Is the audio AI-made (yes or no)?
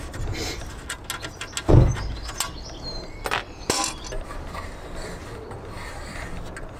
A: no